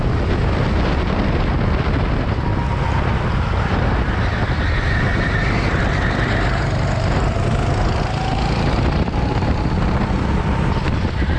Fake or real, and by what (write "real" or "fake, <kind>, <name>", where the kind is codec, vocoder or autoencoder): real